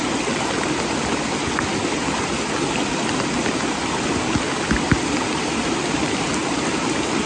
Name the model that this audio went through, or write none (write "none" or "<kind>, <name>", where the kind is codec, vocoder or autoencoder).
none